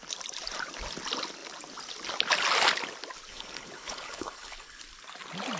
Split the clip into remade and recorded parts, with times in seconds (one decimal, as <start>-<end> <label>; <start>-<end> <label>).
0.0-3.3 recorded; 3.3-4.8 remade; 4.8-5.6 recorded